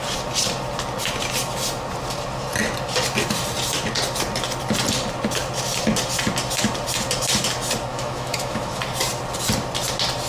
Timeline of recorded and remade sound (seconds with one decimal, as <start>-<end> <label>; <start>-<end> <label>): 0.0-7.9 recorded; 7.9-8.8 remade; 8.8-10.3 recorded